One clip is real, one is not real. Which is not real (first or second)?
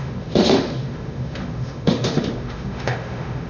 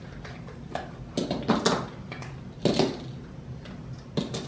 first